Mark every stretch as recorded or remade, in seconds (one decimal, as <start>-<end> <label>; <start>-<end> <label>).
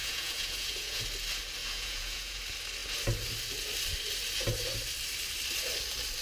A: 0.0-1.0 remade; 1.0-1.6 recorded; 1.6-2.4 remade; 2.4-6.2 recorded